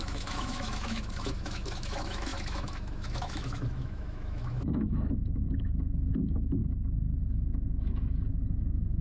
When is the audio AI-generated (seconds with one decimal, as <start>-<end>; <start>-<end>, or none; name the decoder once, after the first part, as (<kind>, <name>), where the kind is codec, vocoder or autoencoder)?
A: 0.0-6.6 (autoencoder, DAC-VAE); 7.2-9.0